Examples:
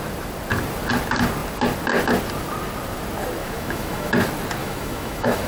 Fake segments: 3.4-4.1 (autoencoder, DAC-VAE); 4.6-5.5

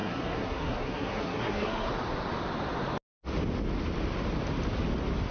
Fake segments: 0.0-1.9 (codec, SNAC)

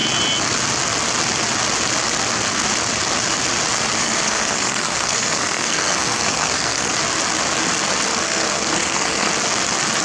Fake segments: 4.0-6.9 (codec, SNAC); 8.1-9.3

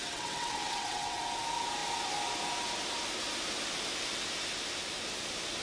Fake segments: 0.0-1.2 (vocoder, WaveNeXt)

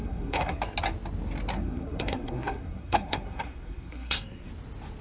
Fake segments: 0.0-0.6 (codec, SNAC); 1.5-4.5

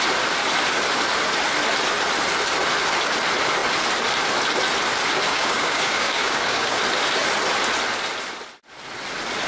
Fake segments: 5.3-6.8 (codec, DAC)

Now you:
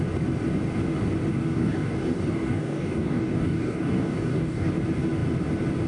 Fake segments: 1.3-4.7 (codec, DAC)